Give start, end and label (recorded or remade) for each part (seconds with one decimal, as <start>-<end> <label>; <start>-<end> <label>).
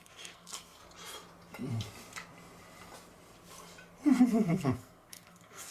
0.0-0.8 remade; 0.8-4.2 recorded; 4.2-5.7 remade